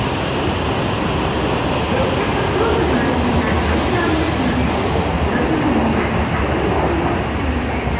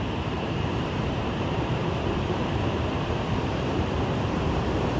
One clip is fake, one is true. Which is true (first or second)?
first